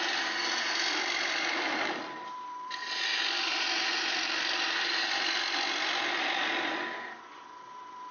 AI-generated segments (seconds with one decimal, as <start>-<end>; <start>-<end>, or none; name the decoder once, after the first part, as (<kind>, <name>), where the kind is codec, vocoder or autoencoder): 0.9-6.5 (vocoder, BigVGAN v2); 7.3-8.1